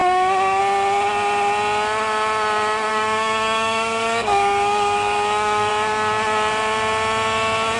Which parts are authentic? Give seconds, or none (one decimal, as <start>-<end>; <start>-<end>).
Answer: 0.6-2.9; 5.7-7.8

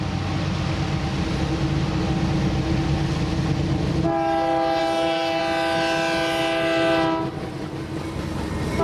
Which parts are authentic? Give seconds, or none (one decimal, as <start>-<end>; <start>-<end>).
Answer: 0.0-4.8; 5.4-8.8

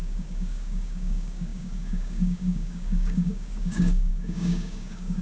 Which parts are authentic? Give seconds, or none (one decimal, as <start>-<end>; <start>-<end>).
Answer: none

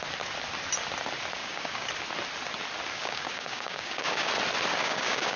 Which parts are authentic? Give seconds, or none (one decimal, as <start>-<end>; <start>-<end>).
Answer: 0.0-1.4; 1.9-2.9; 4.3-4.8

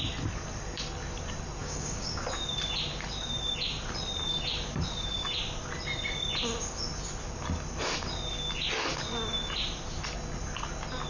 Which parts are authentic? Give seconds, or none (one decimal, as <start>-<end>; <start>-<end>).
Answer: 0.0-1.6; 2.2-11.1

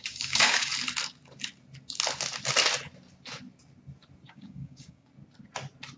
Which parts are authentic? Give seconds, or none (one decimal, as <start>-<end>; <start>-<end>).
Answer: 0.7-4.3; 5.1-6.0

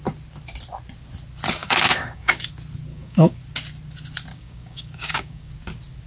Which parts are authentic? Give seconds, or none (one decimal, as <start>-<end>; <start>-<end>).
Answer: 0.0-1.6; 2.5-2.9; 3.4-4.3; 5.5-6.1

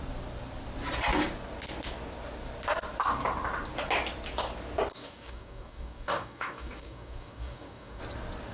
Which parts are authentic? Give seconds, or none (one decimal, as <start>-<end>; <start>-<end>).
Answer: 0.0-4.9; 8.0-8.5